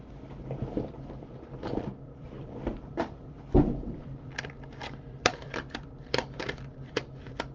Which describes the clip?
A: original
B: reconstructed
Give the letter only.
B